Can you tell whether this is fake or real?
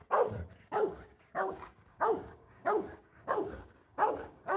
fake